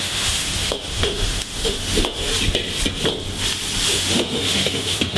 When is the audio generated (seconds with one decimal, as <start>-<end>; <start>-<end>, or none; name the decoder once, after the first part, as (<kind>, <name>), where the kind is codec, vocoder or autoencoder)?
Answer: 0.0-2.3 (autoencoder, DAC-VAE); 3.9-5.2